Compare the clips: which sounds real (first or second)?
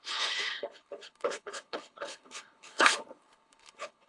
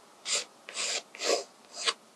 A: second